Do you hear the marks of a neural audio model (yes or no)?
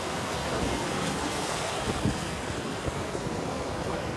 yes